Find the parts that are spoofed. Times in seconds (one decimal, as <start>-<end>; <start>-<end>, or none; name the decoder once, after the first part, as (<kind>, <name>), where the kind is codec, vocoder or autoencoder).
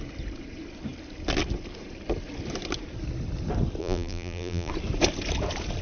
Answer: 3.8-4.7 (vocoder, BigVGAN v2)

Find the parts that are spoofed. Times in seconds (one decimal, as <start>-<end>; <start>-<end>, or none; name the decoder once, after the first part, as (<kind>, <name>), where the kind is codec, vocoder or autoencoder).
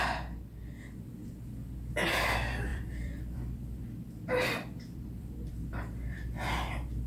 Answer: 2.7-5.5 (vocoder, BigVGAN v2)